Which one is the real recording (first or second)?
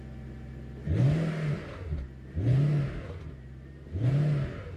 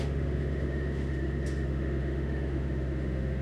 first